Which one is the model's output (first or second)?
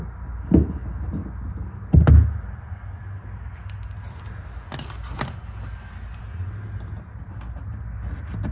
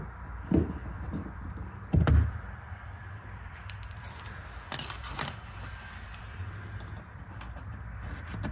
second